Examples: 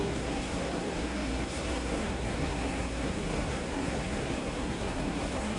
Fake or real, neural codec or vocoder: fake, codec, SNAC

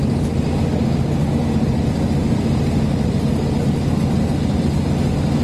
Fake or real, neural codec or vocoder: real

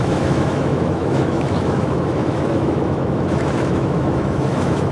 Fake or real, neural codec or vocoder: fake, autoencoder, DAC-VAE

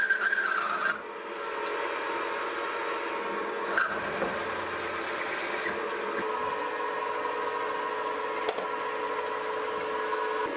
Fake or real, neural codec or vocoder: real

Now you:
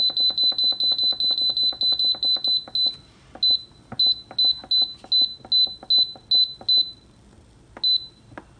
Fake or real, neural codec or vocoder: real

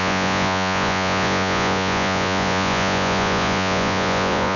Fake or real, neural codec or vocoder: fake, vocoder, Vocos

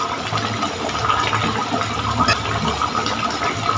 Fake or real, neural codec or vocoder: real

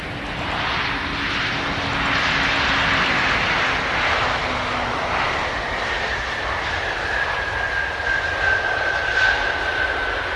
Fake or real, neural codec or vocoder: real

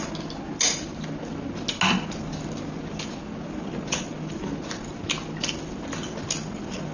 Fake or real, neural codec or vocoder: real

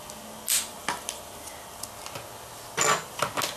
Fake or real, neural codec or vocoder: real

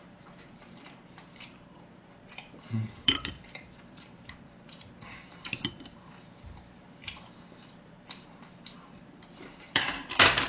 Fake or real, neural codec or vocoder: fake, vocoder, BigVGAN v2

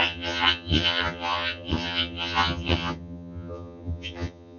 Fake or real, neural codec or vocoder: fake, vocoder, HiFi-GAN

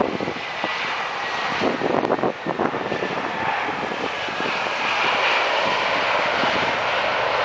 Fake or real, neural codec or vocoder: real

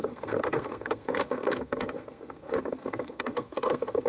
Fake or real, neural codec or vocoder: fake, codec, SNAC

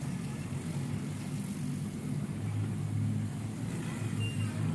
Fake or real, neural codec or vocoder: real